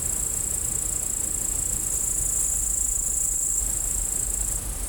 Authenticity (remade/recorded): recorded